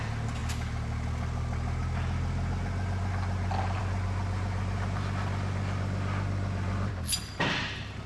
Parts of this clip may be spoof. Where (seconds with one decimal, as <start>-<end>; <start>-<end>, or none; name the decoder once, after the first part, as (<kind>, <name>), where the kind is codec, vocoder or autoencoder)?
none